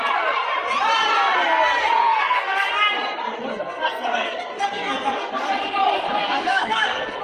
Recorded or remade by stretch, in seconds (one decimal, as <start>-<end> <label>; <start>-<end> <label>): 0.0-2.0 recorded; 2.0-2.7 remade; 2.7-3.5 recorded; 3.5-5.3 remade; 5.3-6.2 recorded; 6.2-7.2 remade